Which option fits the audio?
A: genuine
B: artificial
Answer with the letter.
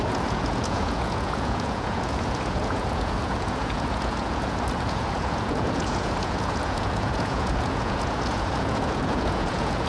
B